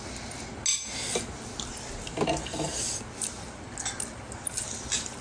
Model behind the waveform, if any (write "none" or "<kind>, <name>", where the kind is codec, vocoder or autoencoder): none